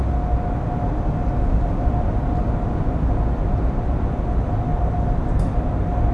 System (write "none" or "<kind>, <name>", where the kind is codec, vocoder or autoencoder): none